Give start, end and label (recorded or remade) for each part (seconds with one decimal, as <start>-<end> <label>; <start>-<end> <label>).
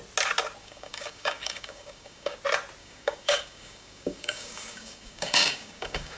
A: 0.0-0.6 recorded; 0.6-2.4 remade; 2.4-2.8 recorded; 2.8-6.2 remade